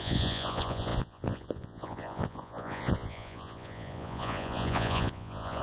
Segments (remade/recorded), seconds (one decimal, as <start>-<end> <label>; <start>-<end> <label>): 0.0-5.6 remade